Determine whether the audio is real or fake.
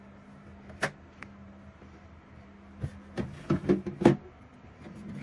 real